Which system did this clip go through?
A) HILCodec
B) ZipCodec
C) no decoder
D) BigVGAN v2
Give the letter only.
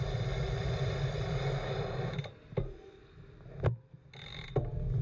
C